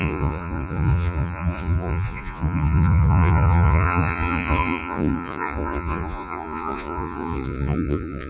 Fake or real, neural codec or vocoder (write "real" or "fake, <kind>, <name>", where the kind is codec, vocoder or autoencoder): fake, vocoder, Vocos